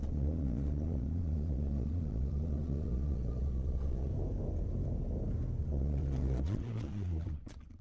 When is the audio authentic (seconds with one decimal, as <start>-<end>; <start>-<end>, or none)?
4.1-5.6